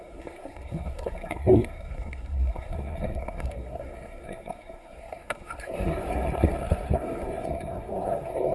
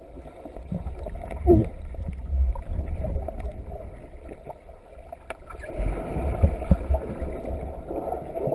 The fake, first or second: first